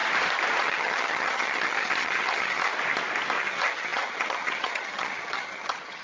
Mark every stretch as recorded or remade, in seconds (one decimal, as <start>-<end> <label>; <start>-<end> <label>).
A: 0.0-0.6 recorded; 0.6-2.7 remade; 2.7-3.4 recorded; 3.4-6.0 remade